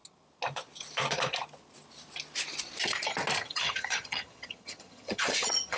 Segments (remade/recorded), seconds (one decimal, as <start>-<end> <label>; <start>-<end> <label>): 0.0-3.5 recorded; 3.5-5.8 remade